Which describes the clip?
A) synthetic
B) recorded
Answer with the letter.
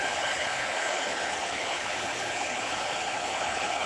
A